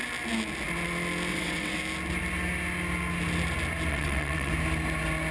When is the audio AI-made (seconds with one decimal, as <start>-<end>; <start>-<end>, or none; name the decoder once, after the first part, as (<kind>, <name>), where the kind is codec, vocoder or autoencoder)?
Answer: 1.3-1.8 (vocoder, WaveNeXt); 3.9-4.5